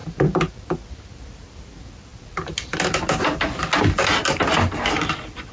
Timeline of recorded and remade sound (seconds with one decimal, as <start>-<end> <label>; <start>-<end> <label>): 0.0-5.5 recorded